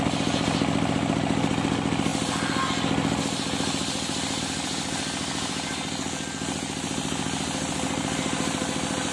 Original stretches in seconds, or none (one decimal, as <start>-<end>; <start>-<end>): 0.0-9.1